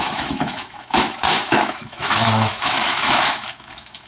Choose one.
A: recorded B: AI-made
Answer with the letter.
B